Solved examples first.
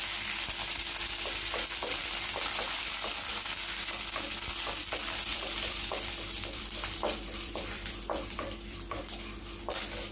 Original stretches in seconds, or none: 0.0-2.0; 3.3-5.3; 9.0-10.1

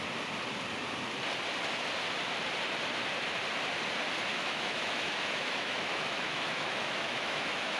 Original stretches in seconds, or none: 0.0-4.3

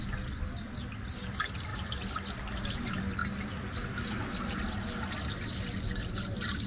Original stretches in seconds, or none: 0.0-6.7

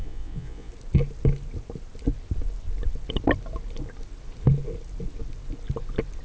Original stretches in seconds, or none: 0.7-6.2

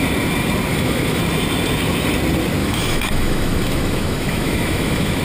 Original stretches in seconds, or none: 0.0-0.7; 1.2-2.6

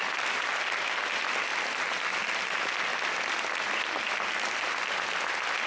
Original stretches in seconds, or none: 0.0-5.7